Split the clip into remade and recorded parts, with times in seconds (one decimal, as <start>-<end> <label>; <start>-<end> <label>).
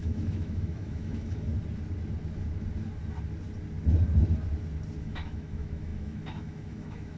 0.0-1.5 remade; 1.5-5.0 recorded; 5.0-7.2 remade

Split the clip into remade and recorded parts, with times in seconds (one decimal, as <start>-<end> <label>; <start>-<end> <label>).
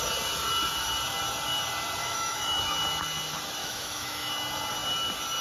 0.0-2.0 recorded; 2.0-2.6 remade; 2.6-3.6 recorded; 3.6-4.3 remade; 4.3-5.4 recorded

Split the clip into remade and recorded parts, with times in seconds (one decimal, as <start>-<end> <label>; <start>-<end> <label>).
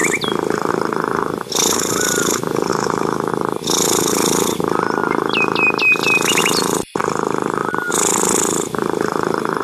0.0-2.7 recorded; 2.7-3.3 remade; 3.3-9.6 recorded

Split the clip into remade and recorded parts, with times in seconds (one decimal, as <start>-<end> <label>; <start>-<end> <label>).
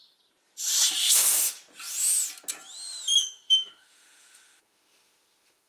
0.0-1.1 recorded; 1.1-1.6 remade; 1.6-3.2 recorded; 3.2-5.7 remade